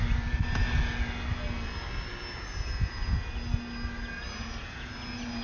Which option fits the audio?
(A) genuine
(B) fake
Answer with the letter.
A